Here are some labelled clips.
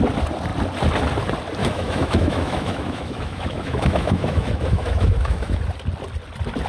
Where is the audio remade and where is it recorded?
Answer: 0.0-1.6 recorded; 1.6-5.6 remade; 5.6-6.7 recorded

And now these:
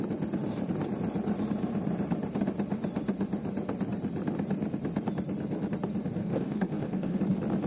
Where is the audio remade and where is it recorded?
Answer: 0.0-6.2 recorded; 6.2-7.2 remade; 7.2-7.7 recorded